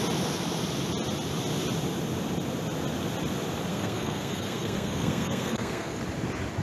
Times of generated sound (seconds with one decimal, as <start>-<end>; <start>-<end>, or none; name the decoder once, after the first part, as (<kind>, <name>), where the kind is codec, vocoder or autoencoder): 3.7-6.0 (codec, SNAC)